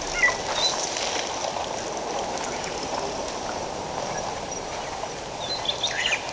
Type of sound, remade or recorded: recorded